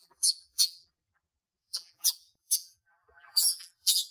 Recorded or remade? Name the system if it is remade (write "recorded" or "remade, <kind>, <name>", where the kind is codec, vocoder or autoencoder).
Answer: remade, vocoder, BigVGAN v2